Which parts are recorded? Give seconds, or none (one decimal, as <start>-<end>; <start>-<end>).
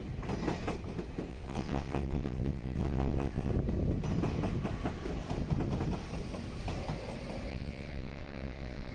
0.0-1.3; 3.5-7.5